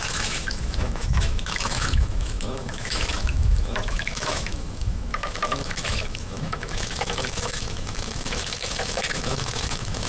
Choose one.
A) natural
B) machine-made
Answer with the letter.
B